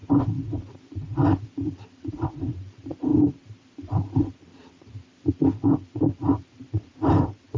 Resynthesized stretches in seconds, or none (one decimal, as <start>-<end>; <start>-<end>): 2.1-3.1; 3.9-4.6; 6.0-7.6